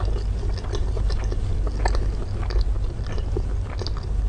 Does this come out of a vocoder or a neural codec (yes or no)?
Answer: no